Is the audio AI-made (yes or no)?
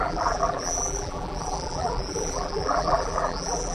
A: yes